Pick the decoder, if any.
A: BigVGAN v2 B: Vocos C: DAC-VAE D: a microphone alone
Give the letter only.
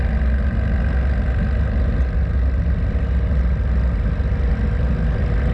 D